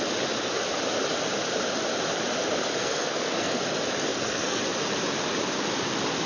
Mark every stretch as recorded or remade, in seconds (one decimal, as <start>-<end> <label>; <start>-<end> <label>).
0.0-2.8 recorded; 2.8-3.6 remade; 3.6-4.1 recorded; 4.1-4.6 remade; 4.6-6.3 recorded